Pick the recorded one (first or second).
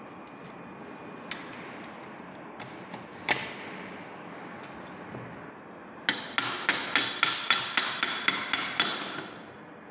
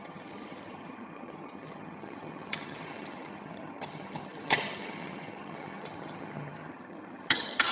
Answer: first